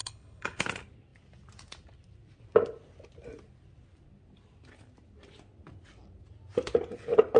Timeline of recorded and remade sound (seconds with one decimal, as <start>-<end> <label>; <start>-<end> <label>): 0.0-0.6 remade; 0.6-7.4 recorded